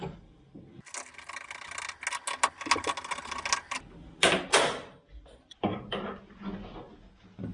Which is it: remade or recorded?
recorded